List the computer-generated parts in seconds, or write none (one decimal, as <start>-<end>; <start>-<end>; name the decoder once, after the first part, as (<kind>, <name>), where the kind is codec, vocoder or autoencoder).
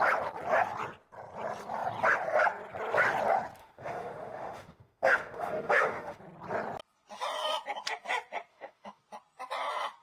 3.6-6.2 (autoencoder, DAC-VAE); 8.5-9.0